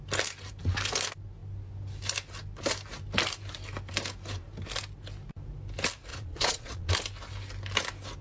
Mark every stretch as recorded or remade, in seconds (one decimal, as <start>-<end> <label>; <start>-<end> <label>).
0.0-6.1 recorded; 6.1-6.9 remade; 6.9-8.2 recorded